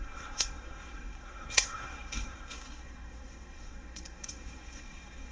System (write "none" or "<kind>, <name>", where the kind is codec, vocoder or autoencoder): codec, SNAC